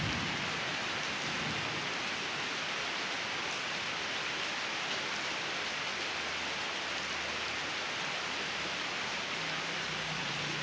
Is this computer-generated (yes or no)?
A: no